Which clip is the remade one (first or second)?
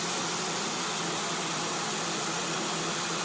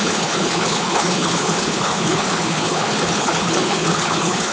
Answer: second